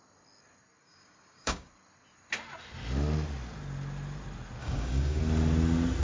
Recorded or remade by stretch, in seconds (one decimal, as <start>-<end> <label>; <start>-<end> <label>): 0.0-0.8 recorded; 0.8-1.7 remade; 1.7-4.6 recorded; 4.6-5.2 remade; 5.2-6.0 recorded